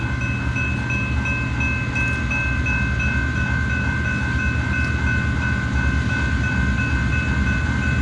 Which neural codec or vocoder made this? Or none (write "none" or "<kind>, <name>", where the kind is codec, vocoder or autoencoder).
none